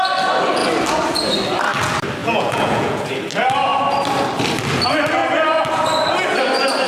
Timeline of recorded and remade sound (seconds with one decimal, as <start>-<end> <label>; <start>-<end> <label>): 0.0-2.2 recorded; 2.2-3.1 remade; 3.1-6.9 recorded

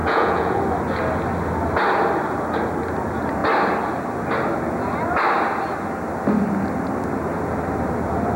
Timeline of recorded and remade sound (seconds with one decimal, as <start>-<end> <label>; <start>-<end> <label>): 0.0-0.6 remade; 0.6-8.4 recorded